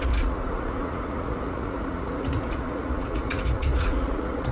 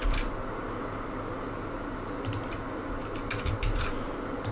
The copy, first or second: first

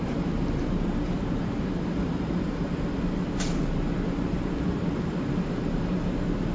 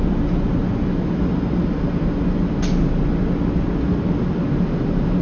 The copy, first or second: first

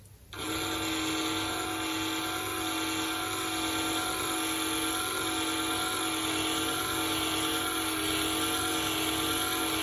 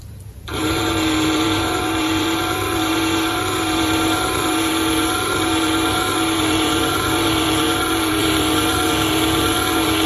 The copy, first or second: second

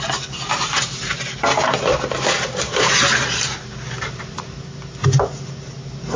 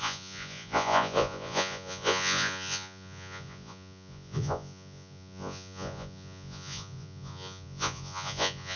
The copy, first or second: second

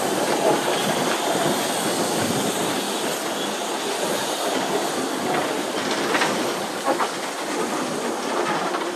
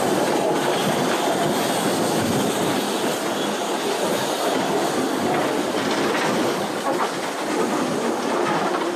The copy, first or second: first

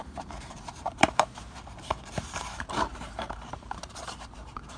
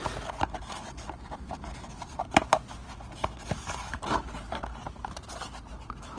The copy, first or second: first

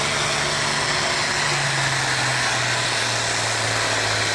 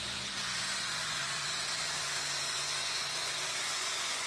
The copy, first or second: second